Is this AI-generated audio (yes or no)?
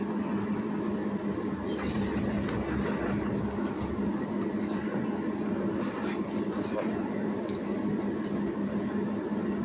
no